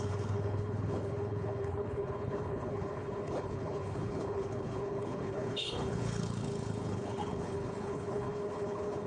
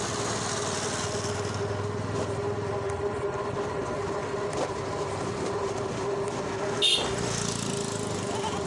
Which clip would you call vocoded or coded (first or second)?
first